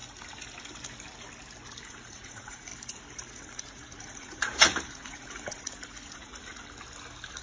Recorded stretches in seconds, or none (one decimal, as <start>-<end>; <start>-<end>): 0.0-1.9; 2.7-3.3; 6.5-7.4